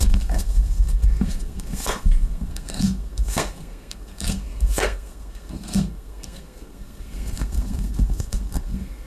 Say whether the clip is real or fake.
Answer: fake